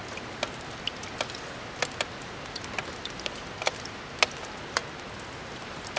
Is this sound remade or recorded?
recorded